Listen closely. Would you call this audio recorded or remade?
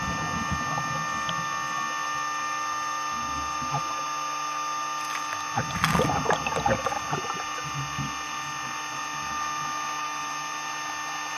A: recorded